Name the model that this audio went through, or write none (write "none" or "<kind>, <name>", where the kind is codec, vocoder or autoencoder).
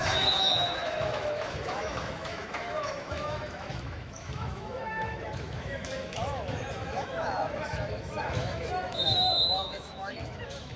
autoencoder, DAC-VAE